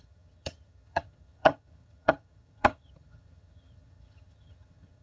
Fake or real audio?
fake